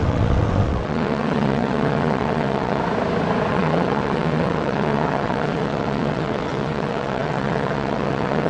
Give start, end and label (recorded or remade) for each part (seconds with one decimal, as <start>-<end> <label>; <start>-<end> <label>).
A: 0.0-2.8 remade; 2.8-3.5 recorded; 3.5-8.5 remade